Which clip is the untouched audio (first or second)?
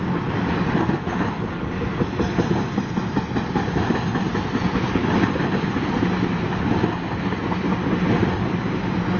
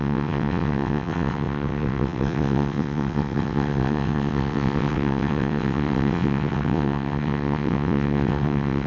first